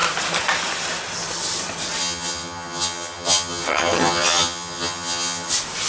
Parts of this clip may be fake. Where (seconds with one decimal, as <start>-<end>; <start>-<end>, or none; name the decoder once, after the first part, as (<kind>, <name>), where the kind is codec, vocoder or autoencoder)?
2.0-5.5 (vocoder, HiFi-GAN)